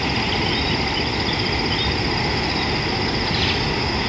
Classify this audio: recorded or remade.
recorded